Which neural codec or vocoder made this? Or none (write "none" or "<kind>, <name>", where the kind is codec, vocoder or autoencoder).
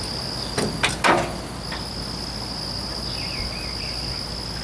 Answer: none